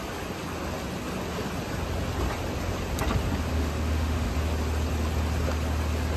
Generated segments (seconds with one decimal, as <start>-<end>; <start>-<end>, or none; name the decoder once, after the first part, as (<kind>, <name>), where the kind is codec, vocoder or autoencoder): 3.5-4.3 (autoencoder, DAC-VAE)